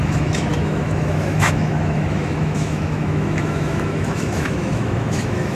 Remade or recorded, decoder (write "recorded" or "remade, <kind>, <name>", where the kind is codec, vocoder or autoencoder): remade, autoencoder, DAC-VAE